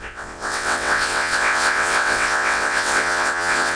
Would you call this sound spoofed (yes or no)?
yes